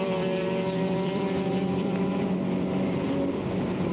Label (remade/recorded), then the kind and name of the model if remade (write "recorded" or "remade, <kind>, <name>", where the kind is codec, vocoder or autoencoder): remade, vocoder, BigVGAN v2